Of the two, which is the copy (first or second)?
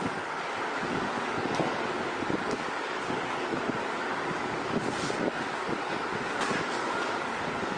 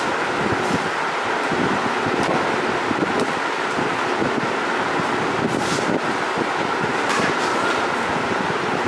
first